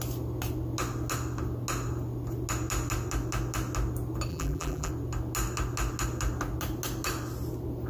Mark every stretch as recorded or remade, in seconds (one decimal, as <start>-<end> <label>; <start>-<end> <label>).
0.0-4.3 recorded; 4.3-4.9 remade; 4.9-7.9 recorded